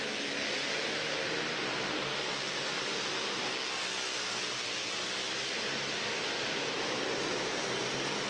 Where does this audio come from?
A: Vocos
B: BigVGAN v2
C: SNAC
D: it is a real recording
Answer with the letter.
D